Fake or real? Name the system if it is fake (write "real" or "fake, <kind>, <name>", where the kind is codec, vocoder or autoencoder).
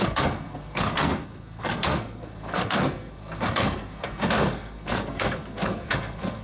fake, codec, SNAC